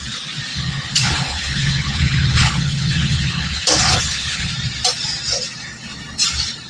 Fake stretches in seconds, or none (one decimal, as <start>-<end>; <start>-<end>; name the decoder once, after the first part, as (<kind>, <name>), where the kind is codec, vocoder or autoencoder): 0.5-4.5 (codec, HILCodec)